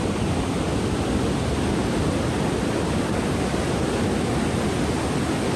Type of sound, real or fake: real